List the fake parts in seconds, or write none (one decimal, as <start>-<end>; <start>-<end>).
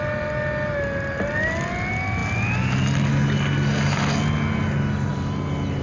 none